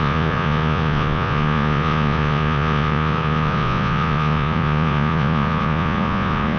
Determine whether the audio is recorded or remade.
remade